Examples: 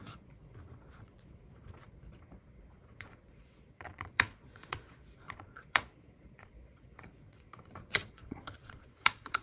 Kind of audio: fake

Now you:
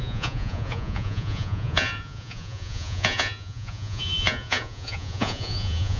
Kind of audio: fake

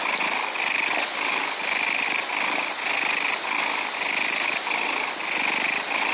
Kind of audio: real